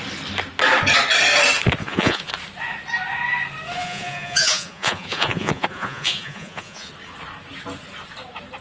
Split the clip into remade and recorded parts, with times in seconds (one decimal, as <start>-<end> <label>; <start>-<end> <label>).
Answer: 0.0-1.8 recorded; 1.8-2.3 remade; 2.3-3.8 recorded; 3.8-6.9 remade; 6.9-8.6 recorded